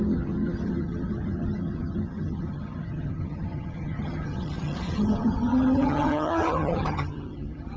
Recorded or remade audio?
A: remade